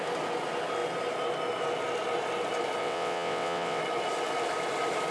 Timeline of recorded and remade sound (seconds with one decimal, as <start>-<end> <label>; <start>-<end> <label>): 0.0-2.8 recorded; 2.8-3.8 remade; 3.8-5.1 recorded